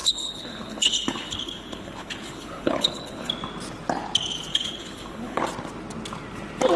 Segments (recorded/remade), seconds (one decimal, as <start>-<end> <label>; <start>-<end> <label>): 0.0-3.3 remade; 3.3-4.5 recorded; 4.5-5.4 remade; 5.4-6.8 recorded